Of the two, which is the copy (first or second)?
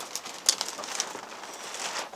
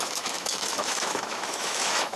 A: second